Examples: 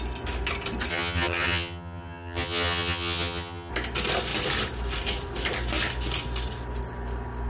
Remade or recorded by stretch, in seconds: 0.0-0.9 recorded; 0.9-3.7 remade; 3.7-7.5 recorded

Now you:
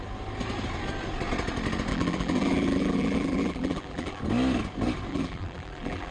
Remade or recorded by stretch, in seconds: 0.0-1.9 recorded; 1.9-4.2 remade; 4.2-5.1 recorded; 5.1-6.1 remade

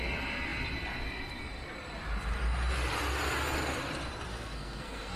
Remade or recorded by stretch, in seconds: 0.0-4.3 recorded; 4.3-5.2 remade

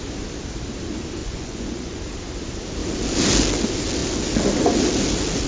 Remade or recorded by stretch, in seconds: 0.0-1.2 recorded; 1.2-2.0 remade; 2.0-5.5 recorded

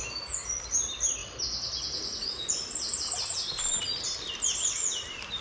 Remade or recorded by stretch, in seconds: 0.0-5.4 recorded